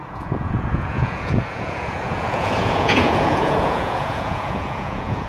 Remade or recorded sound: remade